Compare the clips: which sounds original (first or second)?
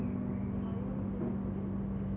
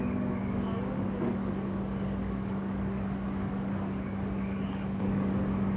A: first